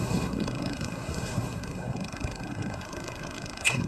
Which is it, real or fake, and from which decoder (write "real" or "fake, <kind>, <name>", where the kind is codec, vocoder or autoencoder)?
fake, codec, SNAC